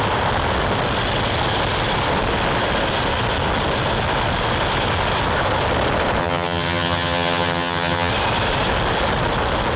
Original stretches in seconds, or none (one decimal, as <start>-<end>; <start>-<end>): 0.0-6.2; 8.1-9.8